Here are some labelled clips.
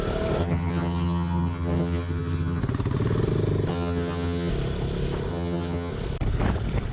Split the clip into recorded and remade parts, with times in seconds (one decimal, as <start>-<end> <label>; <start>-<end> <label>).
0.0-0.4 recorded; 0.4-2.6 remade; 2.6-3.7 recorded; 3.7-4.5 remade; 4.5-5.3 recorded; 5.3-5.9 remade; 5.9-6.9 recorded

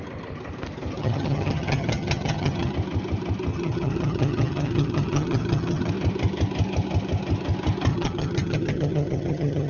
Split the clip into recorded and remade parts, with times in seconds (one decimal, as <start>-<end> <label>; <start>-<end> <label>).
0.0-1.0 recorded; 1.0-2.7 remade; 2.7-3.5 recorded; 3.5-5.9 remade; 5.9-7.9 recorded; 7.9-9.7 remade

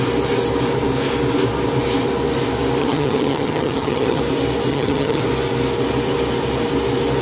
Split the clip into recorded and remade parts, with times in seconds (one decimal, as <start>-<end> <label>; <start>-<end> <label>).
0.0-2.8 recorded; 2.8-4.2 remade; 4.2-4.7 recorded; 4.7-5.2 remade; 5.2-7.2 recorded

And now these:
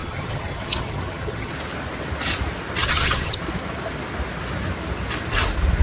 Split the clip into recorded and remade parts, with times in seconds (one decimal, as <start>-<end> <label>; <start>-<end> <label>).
0.0-1.5 remade; 1.5-2.8 recorded; 2.8-3.4 remade; 3.4-5.8 recorded